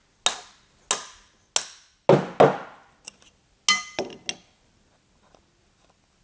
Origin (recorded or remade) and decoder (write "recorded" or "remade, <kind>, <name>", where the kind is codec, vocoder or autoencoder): recorded